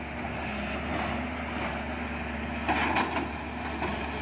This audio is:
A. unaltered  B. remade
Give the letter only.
A